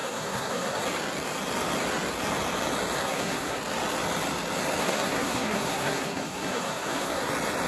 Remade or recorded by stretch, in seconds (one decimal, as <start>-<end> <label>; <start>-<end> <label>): 0.0-0.8 remade; 0.8-3.0 recorded; 3.0-3.6 remade; 3.6-4.8 recorded; 4.8-7.3 remade; 7.3-7.7 recorded